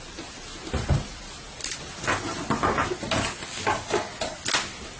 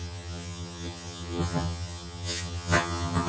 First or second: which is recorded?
first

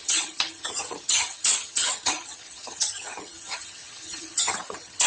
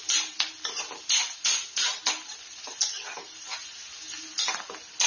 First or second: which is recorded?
second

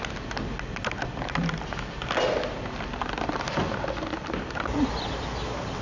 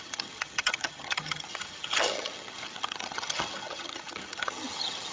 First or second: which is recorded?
first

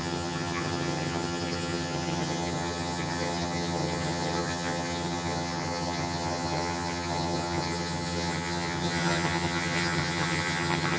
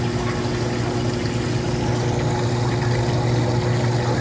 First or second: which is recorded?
second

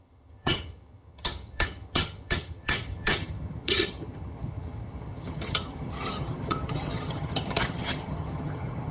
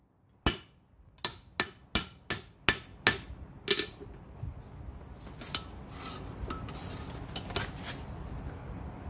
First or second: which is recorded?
second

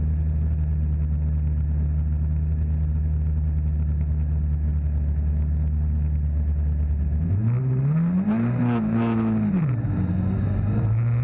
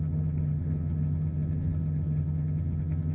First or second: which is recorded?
first